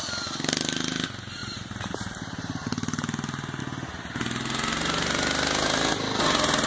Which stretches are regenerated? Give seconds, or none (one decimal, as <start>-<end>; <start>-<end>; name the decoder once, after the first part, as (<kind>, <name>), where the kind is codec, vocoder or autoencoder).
1.4-3.6 (vocoder, BigVGAN v2)